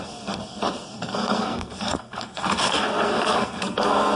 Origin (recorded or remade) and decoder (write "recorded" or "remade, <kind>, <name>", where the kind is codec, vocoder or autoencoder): remade, codec, SNAC